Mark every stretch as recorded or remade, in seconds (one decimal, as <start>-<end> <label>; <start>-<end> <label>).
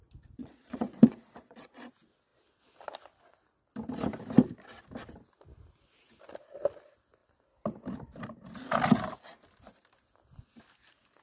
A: 0.0-0.4 recorded; 0.4-1.9 remade; 1.9-11.2 recorded